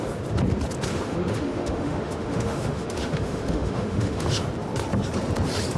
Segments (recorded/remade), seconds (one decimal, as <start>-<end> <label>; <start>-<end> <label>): 0.0-0.9 recorded; 0.9-4.4 remade; 4.4-5.8 recorded